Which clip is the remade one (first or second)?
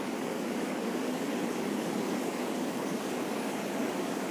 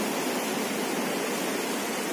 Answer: first